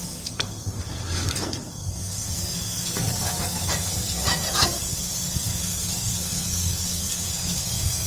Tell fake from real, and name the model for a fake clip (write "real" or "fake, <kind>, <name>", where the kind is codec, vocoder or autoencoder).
fake, codec, SNAC